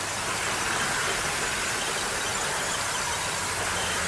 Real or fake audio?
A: real